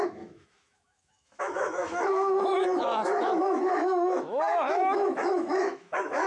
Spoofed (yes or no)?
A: yes